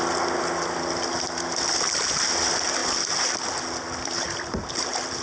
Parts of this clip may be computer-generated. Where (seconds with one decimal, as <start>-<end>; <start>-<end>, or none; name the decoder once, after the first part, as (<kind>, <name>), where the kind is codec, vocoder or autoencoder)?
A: none